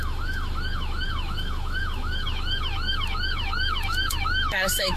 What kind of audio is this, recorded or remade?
remade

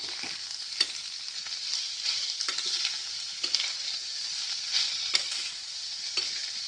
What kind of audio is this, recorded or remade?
recorded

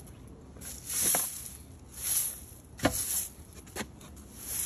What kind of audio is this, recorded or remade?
recorded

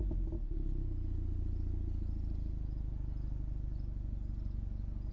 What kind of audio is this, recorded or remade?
recorded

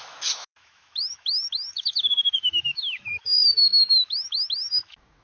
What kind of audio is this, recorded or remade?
remade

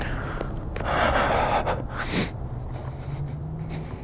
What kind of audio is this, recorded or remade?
recorded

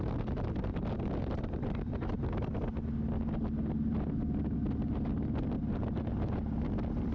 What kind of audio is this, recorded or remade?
recorded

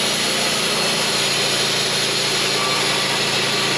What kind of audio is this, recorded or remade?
recorded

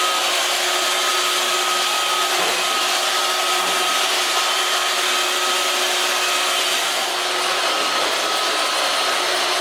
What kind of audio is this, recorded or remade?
recorded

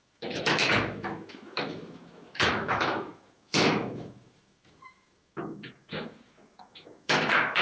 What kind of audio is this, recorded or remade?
remade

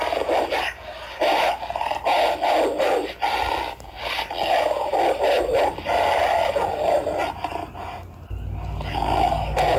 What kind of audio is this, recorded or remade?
recorded